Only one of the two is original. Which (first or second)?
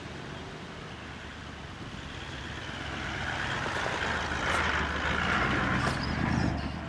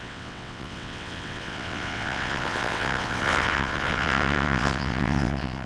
first